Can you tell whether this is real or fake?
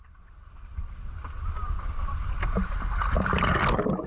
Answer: real